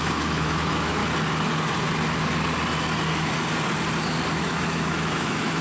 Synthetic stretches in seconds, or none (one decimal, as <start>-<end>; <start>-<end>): 0.0-1.0; 4.4-5.6